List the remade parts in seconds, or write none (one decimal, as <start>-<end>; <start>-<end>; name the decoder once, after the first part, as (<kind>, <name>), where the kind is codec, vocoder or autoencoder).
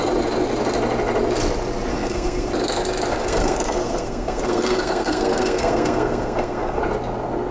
1.9-2.5 (codec, SNAC); 3.1-6.8